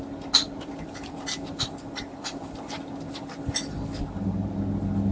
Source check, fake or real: real